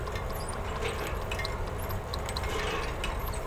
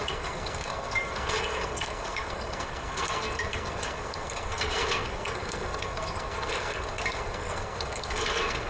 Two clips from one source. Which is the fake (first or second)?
second